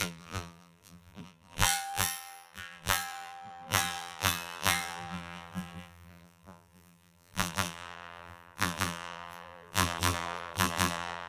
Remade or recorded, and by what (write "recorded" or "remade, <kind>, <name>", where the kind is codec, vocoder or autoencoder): remade, vocoder, BigVGAN v2